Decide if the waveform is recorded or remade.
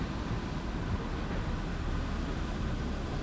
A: recorded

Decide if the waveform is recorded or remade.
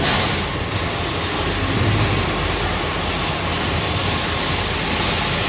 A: recorded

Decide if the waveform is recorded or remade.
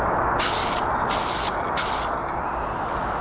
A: recorded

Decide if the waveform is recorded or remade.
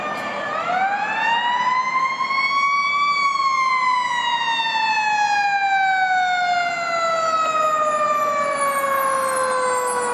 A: recorded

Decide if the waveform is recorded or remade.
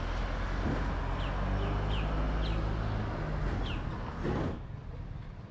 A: recorded